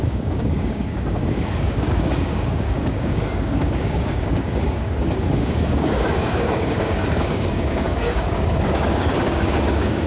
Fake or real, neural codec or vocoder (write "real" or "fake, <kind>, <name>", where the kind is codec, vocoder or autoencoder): fake, codec, DAC